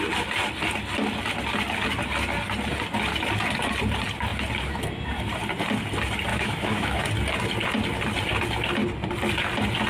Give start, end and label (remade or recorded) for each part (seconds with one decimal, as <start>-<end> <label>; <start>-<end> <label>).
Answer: 0.0-6.3 recorded; 6.3-7.0 remade; 7.0-9.9 recorded